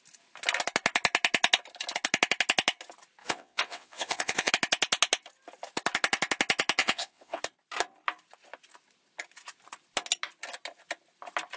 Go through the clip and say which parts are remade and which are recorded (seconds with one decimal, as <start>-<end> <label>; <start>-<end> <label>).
0.0-3.2 recorded; 3.2-4.5 remade; 4.5-6.8 recorded; 6.8-7.4 remade; 7.4-11.6 recorded